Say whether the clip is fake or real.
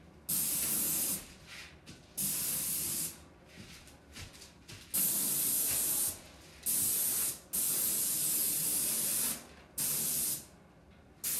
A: real